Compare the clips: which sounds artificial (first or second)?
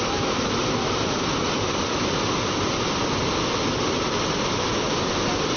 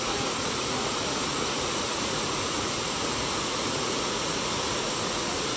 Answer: second